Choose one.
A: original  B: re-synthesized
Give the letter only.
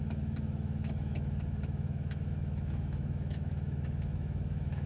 B